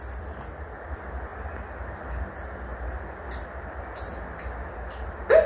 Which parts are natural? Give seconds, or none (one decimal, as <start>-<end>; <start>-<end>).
0.0-5.5